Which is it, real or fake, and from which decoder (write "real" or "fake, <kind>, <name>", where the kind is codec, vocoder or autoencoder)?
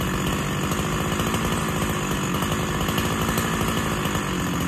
real